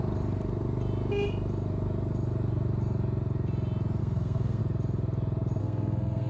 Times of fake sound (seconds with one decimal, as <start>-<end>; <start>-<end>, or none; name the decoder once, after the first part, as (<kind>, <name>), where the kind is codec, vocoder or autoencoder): 4.0-4.6 (codec, SNAC); 5.6-6.3